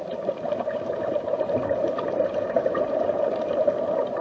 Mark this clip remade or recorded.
remade